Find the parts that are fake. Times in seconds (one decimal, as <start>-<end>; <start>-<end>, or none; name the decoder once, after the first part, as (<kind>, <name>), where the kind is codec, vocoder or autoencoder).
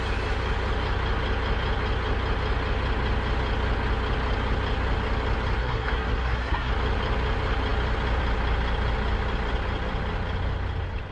5.6-6.7 (codec, SNAC)